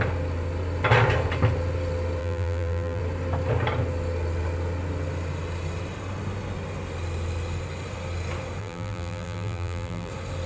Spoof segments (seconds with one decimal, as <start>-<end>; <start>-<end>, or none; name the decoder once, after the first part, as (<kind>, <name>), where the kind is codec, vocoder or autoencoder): 2.2-3.0 (vocoder, BigVGAN v2); 8.6-10.1